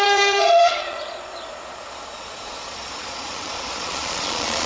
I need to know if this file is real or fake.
fake